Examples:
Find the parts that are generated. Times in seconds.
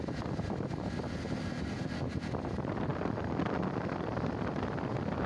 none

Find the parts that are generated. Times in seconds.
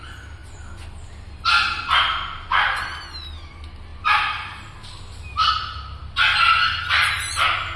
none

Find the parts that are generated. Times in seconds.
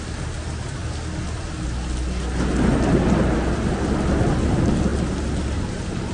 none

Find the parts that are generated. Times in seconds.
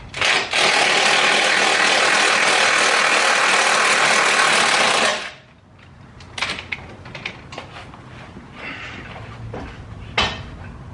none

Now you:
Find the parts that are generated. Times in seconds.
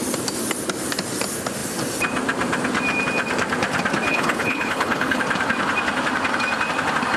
4.1-5.2